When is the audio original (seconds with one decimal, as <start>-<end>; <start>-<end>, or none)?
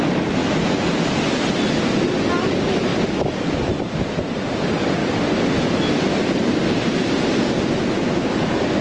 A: 0.0-5.0; 7.2-8.8